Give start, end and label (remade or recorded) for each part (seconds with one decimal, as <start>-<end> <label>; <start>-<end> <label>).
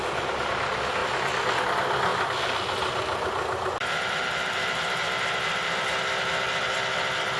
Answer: 0.0-7.4 recorded